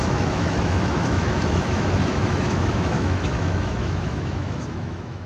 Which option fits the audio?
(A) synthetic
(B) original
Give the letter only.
A